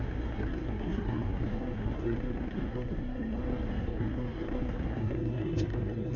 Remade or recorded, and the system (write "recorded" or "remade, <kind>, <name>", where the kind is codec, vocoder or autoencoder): remade, codec, SNAC